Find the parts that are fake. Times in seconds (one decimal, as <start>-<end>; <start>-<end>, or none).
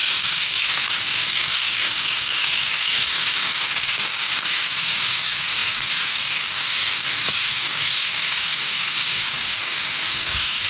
0.0-10.7